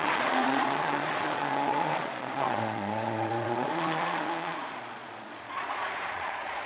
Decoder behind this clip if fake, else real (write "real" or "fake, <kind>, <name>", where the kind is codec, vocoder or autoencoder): fake, vocoder, Vocos